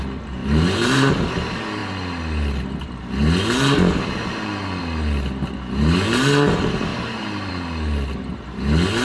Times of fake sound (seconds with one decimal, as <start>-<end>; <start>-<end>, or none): 0.4-1.1; 6.9-7.5